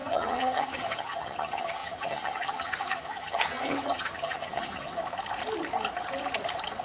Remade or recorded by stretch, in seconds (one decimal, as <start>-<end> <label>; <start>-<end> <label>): 0.0-5.0 remade; 5.0-6.8 recorded